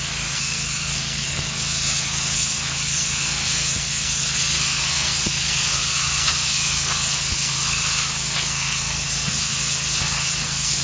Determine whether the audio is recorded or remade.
remade